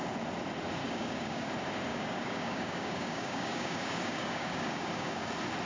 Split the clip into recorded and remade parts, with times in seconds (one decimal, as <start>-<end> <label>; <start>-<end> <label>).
0.0-0.8 recorded; 0.8-1.5 remade; 1.5-1.9 recorded; 1.9-5.3 remade; 5.3-5.7 recorded